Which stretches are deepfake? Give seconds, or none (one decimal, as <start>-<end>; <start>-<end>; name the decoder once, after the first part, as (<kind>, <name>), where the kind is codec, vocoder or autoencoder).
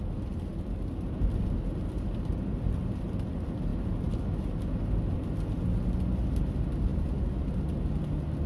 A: none